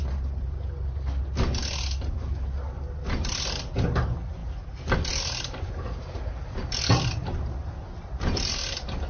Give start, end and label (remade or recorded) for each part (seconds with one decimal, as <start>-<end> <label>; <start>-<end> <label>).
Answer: 0.0-9.1 recorded